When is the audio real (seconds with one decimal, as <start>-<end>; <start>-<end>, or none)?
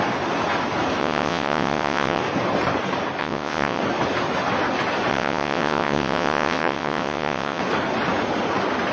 0.0-1.0; 2.2-3.2; 3.8-5.1; 7.6-8.9